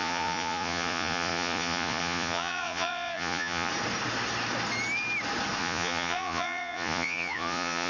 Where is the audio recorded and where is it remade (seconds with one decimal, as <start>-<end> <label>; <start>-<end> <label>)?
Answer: 0.0-3.7 remade; 3.7-5.6 recorded; 5.6-7.9 remade